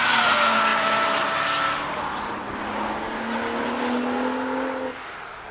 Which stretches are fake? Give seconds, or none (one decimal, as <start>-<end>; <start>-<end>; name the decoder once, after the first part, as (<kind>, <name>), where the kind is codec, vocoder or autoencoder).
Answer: none